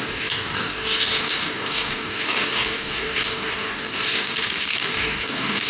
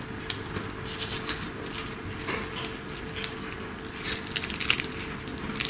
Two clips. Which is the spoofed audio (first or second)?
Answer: first